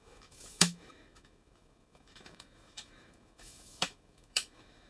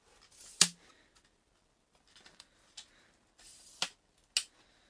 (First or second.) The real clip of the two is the second